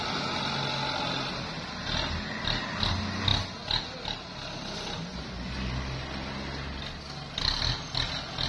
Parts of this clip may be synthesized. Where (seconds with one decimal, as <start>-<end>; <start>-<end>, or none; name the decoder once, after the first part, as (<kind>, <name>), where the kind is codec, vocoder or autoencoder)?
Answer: none